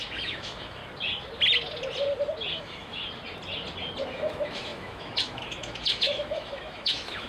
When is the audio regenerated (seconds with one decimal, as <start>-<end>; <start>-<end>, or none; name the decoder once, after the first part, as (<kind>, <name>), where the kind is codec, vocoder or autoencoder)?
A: 0.0-0.8 (autoencoder, DAC-VAE); 2.6-3.0; 4.1-7.3